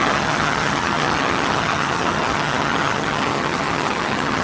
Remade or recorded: remade